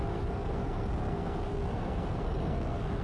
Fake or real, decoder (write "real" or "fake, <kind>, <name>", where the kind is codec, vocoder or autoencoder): fake, codec, SNAC